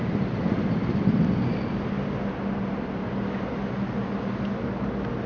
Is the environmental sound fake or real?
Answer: real